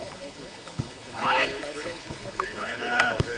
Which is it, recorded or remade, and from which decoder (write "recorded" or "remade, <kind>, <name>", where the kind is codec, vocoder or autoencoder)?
remade, codec, HILCodec